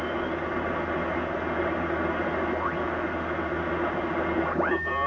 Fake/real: real